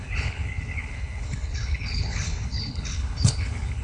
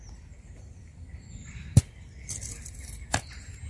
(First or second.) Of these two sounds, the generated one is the first